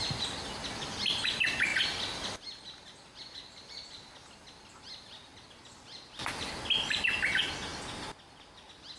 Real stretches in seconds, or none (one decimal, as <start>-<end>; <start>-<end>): 0.0-9.0